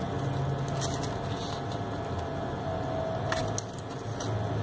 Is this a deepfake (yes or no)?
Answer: no